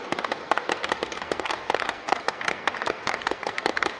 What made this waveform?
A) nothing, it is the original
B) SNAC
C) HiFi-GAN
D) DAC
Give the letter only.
B